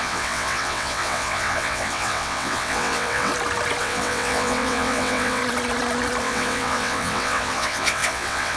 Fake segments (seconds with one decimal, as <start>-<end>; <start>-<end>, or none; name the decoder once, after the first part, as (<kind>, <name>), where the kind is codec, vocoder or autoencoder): 0.0-3.3 (vocoder, WaveNeXt); 3.8-5.4; 6.2-8.6